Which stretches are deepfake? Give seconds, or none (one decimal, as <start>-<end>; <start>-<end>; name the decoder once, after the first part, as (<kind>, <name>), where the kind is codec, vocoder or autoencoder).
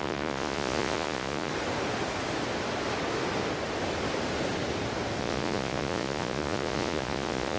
0.0-1.5 (vocoder, Vocos); 5.2-7.6